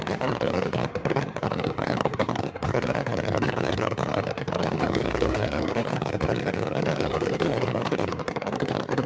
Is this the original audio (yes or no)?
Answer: no